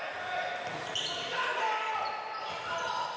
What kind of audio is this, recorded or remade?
recorded